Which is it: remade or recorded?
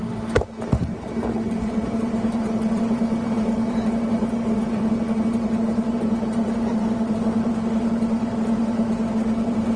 remade